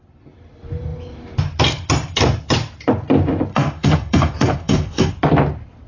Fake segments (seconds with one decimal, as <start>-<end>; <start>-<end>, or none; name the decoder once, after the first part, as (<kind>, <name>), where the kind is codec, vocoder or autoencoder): 3.5-5.1 (codec, SNAC)